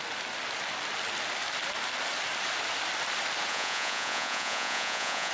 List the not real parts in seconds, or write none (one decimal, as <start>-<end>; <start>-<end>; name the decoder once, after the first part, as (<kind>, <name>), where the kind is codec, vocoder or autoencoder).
3.5-5.3 (vocoder, Vocos)